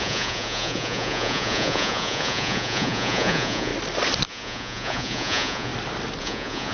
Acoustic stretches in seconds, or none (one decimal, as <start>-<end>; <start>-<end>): 3.7-4.3; 5.7-6.2